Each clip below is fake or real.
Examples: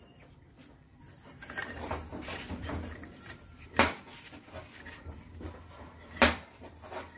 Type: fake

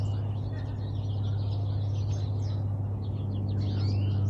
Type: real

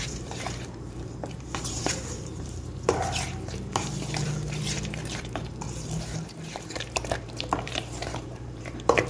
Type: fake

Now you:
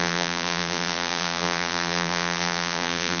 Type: fake